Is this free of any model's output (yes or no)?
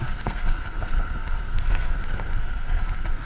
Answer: no